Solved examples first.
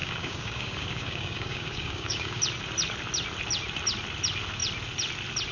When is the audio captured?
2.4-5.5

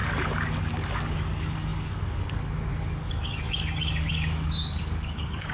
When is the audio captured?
none